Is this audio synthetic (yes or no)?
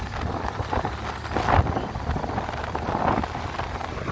no